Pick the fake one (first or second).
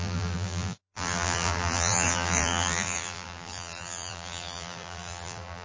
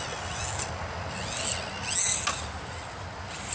first